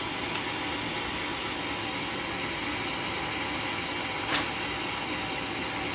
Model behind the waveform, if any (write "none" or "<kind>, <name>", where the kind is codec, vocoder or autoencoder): none